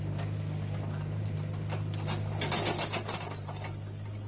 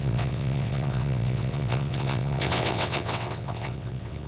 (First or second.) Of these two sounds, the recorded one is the first